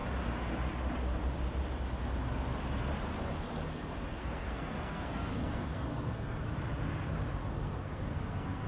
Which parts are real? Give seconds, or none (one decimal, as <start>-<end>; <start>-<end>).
0.0-4.1; 6.5-7.4